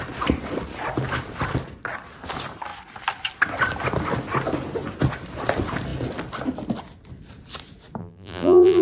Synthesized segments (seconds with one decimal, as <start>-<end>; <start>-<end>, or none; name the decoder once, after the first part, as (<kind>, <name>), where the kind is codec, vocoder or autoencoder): 8.0-8.8 (vocoder, BigVGAN v2)